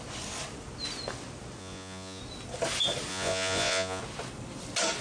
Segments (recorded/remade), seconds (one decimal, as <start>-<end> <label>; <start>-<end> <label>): 0.0-1.6 recorded; 1.6-2.2 remade; 2.2-3.1 recorded; 3.1-4.0 remade; 4.0-5.0 recorded